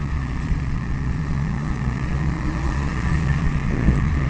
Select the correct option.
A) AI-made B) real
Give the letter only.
A